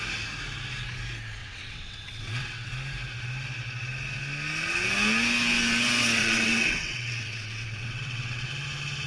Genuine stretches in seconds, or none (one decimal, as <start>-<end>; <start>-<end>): 0.0-1.4; 2.7-6.2; 8.5-9.1